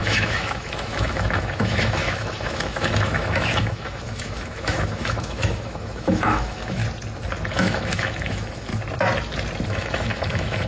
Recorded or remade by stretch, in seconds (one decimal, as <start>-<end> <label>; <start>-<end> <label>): 0.0-6.8 remade; 6.8-7.5 recorded; 7.5-8.7 remade; 8.7-9.7 recorded; 9.7-10.7 remade